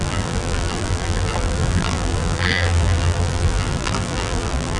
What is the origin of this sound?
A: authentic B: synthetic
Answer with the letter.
B